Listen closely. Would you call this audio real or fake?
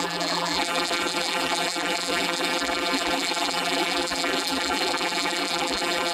fake